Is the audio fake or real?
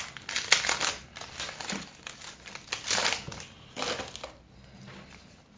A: real